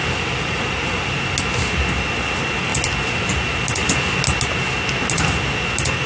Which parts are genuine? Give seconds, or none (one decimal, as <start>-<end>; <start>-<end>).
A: 0.0-6.1